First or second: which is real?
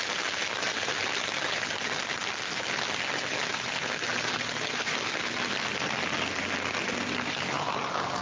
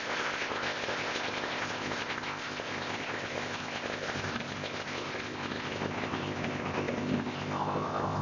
first